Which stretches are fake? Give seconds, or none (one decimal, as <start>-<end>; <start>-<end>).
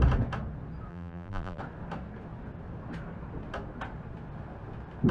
0.9-1.6